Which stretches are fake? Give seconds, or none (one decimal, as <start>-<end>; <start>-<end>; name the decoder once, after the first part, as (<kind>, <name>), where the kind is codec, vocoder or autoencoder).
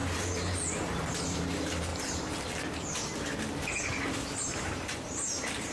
0.0-1.9 (vocoder, BigVGAN v2); 4.1-5.7